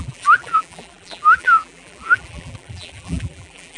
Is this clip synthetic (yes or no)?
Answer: yes